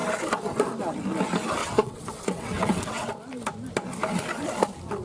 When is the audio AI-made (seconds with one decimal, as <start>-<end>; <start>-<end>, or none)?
1.6-3.1